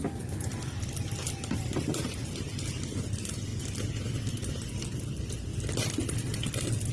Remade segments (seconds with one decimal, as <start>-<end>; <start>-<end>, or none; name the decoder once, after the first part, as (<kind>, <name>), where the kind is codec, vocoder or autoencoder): none